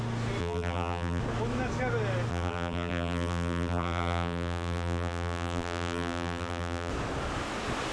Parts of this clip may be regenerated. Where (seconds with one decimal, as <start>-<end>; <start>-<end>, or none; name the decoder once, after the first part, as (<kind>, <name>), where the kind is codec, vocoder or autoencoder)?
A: 0.4-1.2 (vocoder, BigVGAN v2); 2.3-6.9